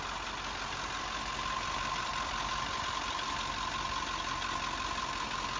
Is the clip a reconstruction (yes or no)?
no